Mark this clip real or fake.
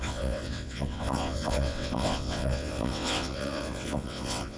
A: fake